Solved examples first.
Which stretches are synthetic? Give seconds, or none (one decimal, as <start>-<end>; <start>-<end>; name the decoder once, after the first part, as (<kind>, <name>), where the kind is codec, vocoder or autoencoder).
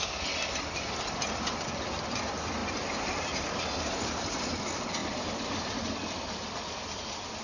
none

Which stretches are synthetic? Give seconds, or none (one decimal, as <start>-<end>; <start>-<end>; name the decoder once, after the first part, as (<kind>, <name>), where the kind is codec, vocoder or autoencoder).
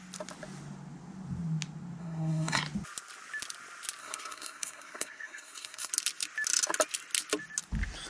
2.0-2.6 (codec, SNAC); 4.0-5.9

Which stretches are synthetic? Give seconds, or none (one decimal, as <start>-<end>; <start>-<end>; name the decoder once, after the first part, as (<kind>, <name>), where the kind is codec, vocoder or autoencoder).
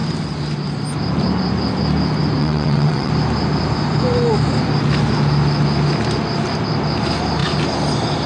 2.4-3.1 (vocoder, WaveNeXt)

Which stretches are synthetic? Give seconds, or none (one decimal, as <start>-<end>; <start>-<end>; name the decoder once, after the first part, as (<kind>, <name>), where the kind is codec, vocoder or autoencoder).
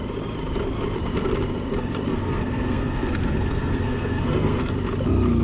2.1-4.7 (codec, SNAC)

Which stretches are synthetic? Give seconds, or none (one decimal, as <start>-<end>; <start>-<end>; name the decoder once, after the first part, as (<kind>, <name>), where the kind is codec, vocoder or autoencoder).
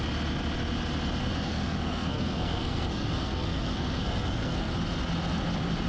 1.2-4.7 (codec, SNAC)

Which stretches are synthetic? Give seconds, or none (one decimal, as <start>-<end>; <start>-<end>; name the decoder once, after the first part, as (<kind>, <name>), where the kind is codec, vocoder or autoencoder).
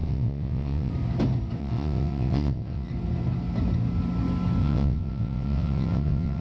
0.0-0.9 (vocoder, WaveNeXt); 1.6-2.9; 4.6-6.4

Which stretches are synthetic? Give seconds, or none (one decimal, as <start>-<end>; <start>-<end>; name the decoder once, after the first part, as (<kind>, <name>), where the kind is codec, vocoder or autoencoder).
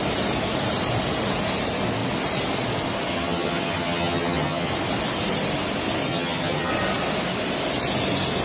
3.1-4.7 (vocoder, HiFi-GAN); 6.1-6.7